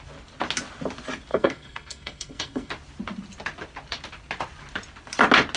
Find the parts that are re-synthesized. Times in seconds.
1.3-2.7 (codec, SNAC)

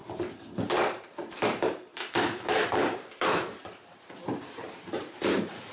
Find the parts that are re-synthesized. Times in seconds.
0.7-5.7 (vocoder, BigVGAN v2)

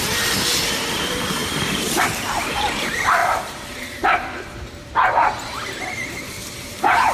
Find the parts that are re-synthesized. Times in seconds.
0.0-7.1 (vocoder, BigVGAN v2)